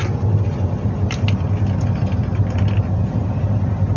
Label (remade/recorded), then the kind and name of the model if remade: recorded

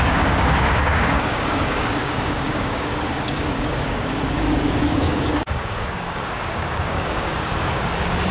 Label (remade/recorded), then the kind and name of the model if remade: remade, codec, DAC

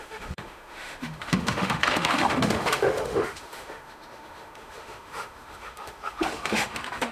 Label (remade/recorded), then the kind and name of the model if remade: remade, autoencoder, DAC-VAE